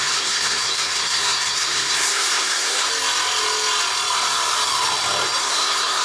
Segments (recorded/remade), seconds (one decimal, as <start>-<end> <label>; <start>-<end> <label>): 0.0-2.9 remade; 2.9-5.4 recorded; 5.4-6.0 remade

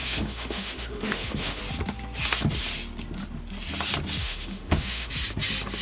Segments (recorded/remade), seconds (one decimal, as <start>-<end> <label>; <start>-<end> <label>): 0.0-1.6 remade; 1.6-4.2 recorded; 4.2-5.1 remade; 5.1-5.8 recorded

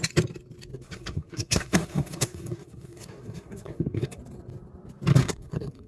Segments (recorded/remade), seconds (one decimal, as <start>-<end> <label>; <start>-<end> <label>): 0.0-0.7 recorded; 0.7-4.2 remade; 4.2-5.1 recorded; 5.1-5.9 remade

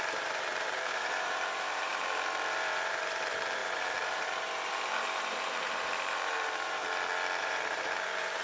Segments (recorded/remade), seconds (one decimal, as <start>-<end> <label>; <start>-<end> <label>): 0.0-6.8 remade; 6.8-7.4 recorded; 7.4-8.4 remade

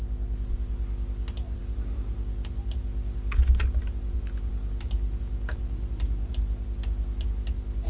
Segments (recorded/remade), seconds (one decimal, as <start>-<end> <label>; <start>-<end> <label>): 0.0-7.9 recorded

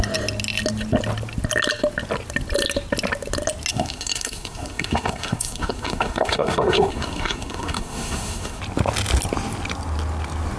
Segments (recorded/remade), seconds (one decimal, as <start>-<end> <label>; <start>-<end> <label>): 0.0-3.7 recorded; 3.7-8.6 remade; 8.6-10.6 recorded

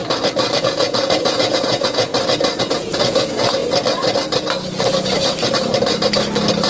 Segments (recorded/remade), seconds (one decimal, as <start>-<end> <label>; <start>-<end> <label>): 0.0-0.6 recorded; 0.6-2.1 remade; 2.1-2.6 recorded; 2.6-3.6 remade; 3.6-6.7 recorded